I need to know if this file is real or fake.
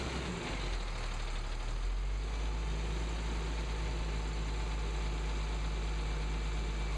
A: real